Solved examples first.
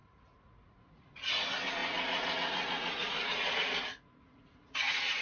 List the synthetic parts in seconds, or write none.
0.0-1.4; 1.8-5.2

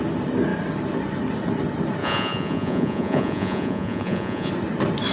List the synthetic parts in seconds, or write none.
2.0-4.5

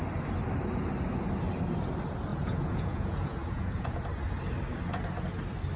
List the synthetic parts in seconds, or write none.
2.3-4.0

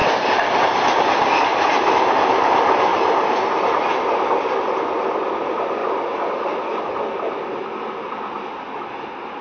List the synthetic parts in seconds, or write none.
0.0-1.1; 2.9-3.9; 5.8-6.8

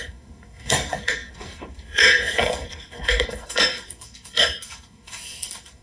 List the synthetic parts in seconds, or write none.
0.0-5.8

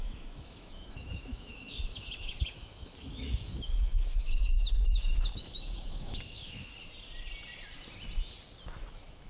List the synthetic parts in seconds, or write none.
0.0-6.7; 8.9-9.3